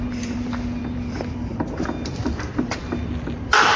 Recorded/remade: remade